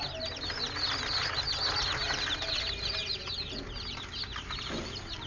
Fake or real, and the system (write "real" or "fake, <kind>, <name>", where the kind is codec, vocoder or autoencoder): real